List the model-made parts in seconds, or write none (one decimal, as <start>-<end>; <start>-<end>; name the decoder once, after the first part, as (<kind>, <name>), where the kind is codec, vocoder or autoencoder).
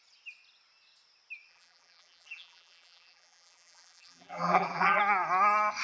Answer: 1.5-5.0 (vocoder, BigVGAN v2)